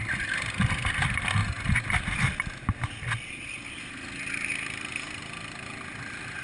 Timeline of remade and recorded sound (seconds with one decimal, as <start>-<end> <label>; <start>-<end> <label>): 0.0-6.4 recorded